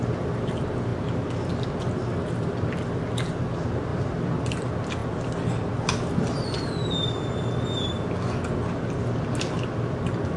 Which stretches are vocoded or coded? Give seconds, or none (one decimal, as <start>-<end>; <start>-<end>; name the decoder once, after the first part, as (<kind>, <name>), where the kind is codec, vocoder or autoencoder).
none